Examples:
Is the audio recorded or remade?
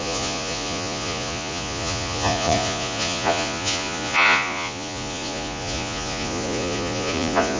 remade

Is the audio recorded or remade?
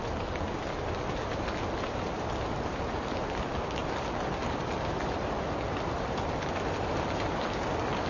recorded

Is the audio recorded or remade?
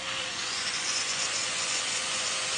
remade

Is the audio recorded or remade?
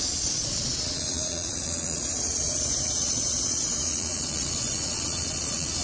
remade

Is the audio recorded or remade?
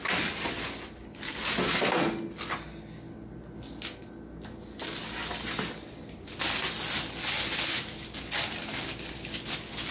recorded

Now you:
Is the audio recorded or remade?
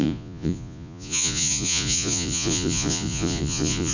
remade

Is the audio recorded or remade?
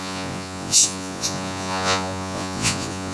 remade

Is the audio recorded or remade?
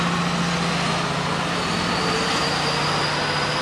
recorded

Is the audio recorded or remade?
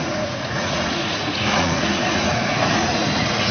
remade